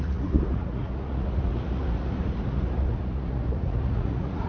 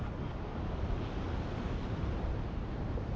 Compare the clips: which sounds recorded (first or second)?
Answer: second